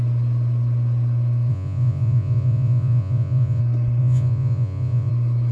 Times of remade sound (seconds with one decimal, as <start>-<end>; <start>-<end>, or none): 1.5-3.6; 4.0-5.1